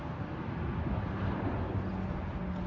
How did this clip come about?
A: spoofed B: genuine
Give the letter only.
B